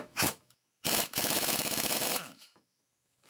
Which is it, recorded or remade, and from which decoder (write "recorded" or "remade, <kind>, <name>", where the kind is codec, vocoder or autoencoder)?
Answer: remade, autoencoder, DAC-VAE